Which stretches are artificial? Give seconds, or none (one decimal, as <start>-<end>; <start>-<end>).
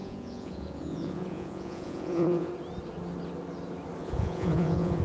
0.0-2.5; 4.0-5.0